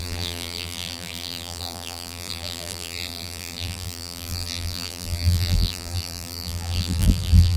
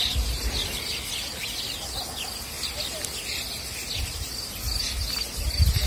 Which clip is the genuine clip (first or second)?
second